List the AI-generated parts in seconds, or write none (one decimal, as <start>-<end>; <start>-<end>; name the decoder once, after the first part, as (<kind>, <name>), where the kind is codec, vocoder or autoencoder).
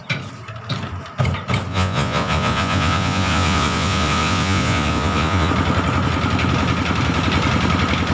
1.7-5.5 (vocoder, Vocos)